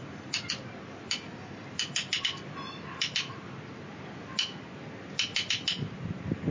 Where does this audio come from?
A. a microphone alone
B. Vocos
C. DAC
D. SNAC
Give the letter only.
A